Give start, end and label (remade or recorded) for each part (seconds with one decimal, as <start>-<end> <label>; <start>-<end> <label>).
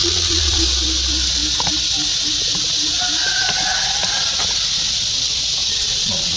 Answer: 0.0-0.6 remade; 0.6-5.6 recorded; 5.6-6.4 remade